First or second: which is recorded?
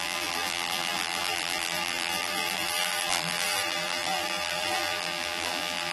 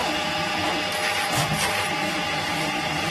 second